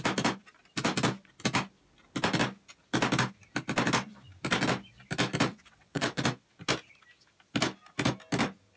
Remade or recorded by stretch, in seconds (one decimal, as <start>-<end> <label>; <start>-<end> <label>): 0.0-5.5 recorded; 5.5-6.2 remade; 6.2-8.8 recorded